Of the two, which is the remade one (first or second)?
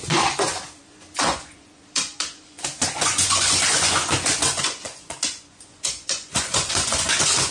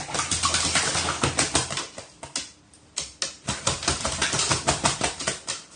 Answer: first